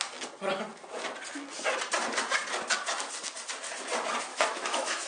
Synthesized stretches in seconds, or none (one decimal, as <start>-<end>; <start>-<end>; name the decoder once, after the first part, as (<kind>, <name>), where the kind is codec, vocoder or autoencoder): 4.3-5.1 (autoencoder, DAC-VAE)